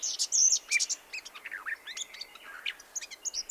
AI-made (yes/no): no